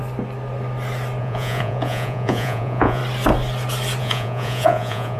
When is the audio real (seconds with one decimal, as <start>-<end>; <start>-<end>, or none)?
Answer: 0.0-1.2; 3.0-4.0